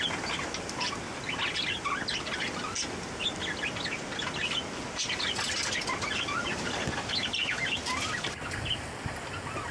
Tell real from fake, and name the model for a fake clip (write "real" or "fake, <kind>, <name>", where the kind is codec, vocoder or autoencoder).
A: real